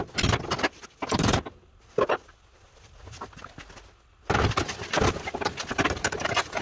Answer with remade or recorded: recorded